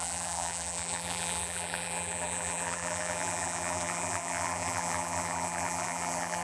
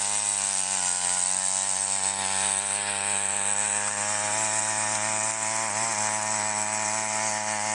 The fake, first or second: first